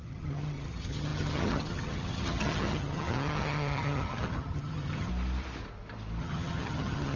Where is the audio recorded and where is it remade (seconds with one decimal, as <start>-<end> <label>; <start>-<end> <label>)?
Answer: 0.0-5.1 remade; 5.1-6.2 recorded; 6.2-7.2 remade